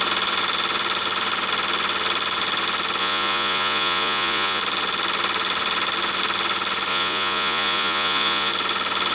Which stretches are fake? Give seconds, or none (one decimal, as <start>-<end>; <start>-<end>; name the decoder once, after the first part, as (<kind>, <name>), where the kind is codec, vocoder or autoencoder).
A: 3.0-4.6 (vocoder, Vocos); 6.9-8.5